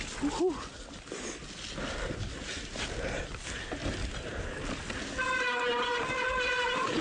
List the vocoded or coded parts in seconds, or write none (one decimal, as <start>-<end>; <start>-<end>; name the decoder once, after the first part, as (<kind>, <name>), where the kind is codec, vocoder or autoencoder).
none